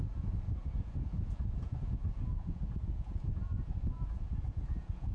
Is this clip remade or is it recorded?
remade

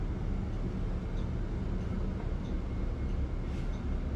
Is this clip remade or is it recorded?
recorded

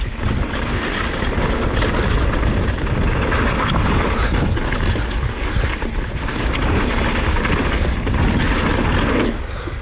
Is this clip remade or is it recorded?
recorded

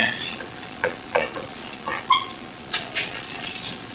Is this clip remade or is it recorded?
remade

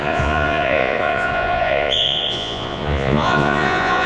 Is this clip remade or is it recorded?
remade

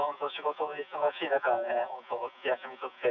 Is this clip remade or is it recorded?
remade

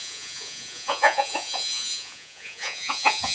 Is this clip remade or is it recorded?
remade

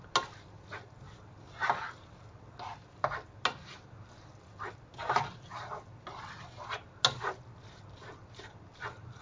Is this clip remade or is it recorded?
recorded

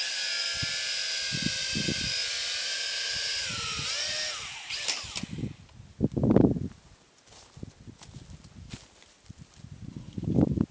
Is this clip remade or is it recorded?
recorded